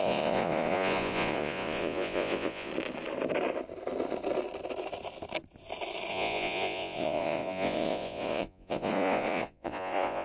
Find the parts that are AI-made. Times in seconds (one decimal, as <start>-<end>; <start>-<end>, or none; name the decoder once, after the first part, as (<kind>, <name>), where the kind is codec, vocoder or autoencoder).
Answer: 0.0-2.7 (vocoder, Vocos); 6.1-10.2